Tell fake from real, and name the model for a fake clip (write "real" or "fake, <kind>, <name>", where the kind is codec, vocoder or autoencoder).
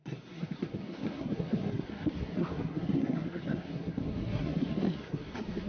fake, codec, SNAC